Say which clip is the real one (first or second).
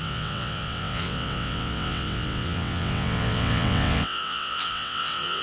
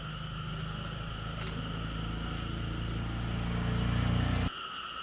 second